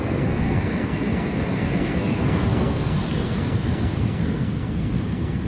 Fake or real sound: fake